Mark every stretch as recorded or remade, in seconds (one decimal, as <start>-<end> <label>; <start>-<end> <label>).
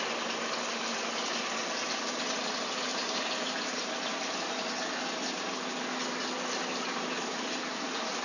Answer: 0.0-2.9 recorded; 2.9-4.3 remade; 4.3-8.2 recorded